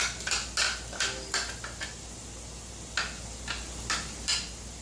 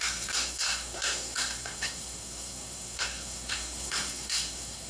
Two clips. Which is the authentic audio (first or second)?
first